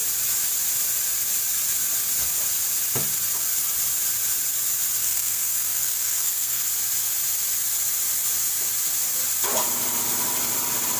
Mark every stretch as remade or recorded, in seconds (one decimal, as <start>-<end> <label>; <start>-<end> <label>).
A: 0.0-5.0 recorded; 5.0-6.6 remade; 6.6-11.0 recorded